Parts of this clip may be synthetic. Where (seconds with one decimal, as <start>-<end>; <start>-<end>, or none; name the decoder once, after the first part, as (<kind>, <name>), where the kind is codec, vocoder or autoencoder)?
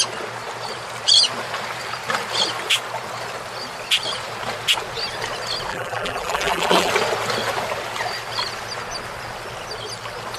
5.7-6.9 (vocoder, BigVGAN v2)